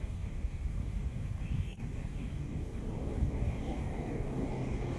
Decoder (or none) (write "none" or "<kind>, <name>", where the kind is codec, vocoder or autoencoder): codec, DAC